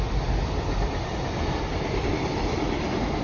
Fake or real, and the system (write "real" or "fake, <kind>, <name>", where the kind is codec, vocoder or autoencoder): real